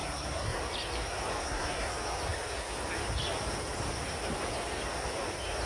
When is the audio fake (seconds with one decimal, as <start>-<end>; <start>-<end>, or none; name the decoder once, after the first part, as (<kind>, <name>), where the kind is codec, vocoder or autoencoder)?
0.0-0.6 (codec, SNAC); 1.4-1.9